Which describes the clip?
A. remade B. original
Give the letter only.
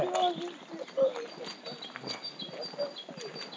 B